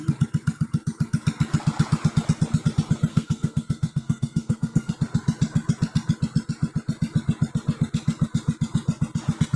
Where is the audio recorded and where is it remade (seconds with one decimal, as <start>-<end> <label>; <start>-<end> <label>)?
0.0-3.1 recorded; 3.1-4.9 remade; 4.9-9.6 recorded